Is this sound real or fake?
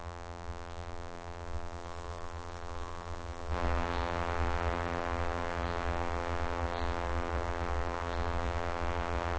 fake